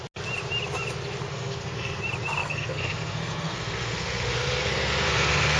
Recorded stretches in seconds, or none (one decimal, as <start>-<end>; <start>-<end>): 0.0-1.3; 2.0-2.4